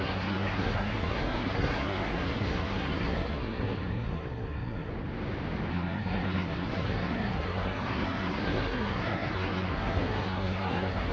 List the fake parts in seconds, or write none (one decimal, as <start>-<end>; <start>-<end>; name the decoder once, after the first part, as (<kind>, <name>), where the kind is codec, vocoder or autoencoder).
0.0-4.9 (codec, SNAC); 5.7-11.1